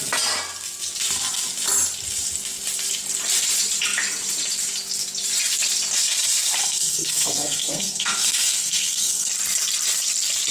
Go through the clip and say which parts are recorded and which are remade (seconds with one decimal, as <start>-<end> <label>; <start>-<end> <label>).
0.0-6.6 recorded; 6.6-9.3 remade; 9.3-10.5 recorded

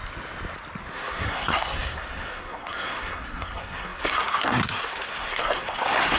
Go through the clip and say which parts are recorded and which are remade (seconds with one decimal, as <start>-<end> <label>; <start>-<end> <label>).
0.0-0.9 recorded; 0.9-6.2 remade

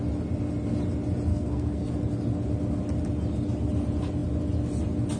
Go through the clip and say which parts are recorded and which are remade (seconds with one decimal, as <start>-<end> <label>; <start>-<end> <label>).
0.0-1.3 recorded; 1.3-1.9 remade; 1.9-5.2 recorded

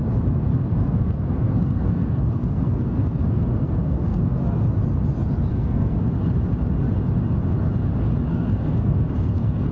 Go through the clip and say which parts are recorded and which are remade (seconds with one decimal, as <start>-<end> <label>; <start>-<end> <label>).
0.0-0.5 recorded; 0.5-4.2 remade; 4.2-5.5 recorded; 5.5-6.0 remade; 6.0-8.3 recorded; 8.3-9.7 remade

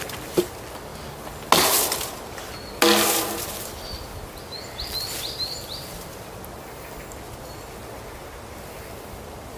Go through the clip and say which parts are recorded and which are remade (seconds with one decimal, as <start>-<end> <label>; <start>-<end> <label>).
0.0-9.6 recorded

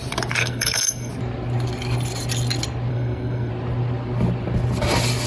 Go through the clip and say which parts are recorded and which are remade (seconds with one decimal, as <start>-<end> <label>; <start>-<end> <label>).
0.0-0.4 recorded; 0.4-1.1 remade; 1.1-2.9 recorded; 2.9-3.5 remade; 3.5-5.3 recorded